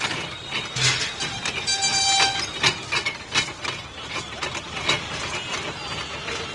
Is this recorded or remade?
recorded